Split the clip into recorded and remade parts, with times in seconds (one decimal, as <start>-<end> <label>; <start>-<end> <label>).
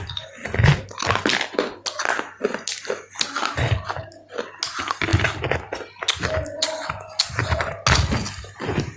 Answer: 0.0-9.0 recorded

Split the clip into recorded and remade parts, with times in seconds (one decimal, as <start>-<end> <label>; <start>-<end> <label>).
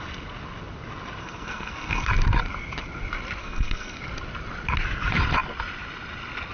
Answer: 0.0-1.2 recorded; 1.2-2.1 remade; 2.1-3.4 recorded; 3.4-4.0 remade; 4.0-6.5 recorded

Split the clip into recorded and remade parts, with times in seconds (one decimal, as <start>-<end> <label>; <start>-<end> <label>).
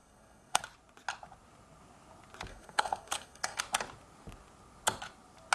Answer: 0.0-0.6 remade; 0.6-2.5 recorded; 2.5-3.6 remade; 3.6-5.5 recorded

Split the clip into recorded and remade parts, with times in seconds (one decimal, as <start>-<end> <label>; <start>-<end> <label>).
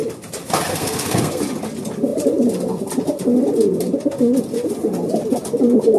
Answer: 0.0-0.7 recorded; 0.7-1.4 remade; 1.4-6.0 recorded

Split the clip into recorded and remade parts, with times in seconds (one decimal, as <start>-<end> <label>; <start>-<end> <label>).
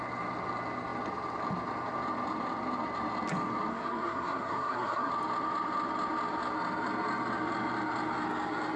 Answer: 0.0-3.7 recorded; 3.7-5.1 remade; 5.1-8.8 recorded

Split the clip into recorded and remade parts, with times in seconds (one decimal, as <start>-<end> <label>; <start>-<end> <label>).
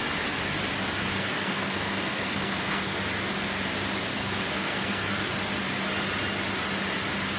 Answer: 0.0-1.1 recorded; 1.1-3.0 remade; 3.0-4.1 recorded; 4.1-5.3 remade; 5.3-7.4 recorded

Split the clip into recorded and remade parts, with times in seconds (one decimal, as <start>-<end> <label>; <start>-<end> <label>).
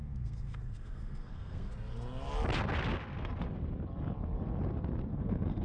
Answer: 0.0-1.7 remade; 1.7-5.1 recorded; 5.1-5.6 remade